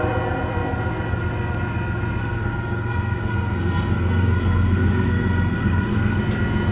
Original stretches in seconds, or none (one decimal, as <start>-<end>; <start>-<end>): 0.0-2.2; 6.2-6.7